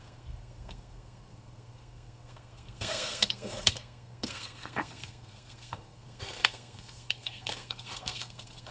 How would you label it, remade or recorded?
remade